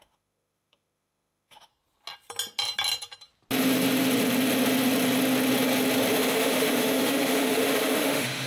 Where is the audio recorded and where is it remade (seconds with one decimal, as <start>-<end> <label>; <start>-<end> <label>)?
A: 0.0-1.7 remade; 1.7-6.1 recorded; 6.1-8.5 remade